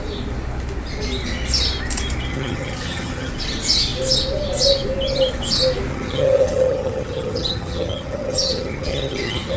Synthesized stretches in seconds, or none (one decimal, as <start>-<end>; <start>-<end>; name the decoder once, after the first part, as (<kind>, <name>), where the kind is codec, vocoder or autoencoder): 2.3-3.3 (vocoder, HiFi-GAN); 5.9-9.6